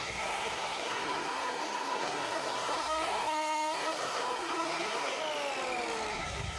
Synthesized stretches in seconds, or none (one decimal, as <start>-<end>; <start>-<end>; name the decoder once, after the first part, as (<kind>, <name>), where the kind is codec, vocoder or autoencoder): 0.0-5.2 (codec, SNAC); 6.1-6.6